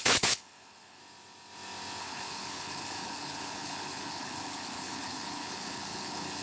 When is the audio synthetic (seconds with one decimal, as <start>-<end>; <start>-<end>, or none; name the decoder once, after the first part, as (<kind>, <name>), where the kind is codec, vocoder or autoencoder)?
0.0-1.0 (codec, HILCodec); 2.0-6.4